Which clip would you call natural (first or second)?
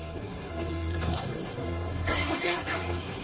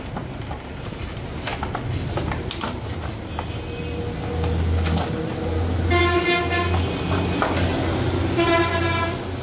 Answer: second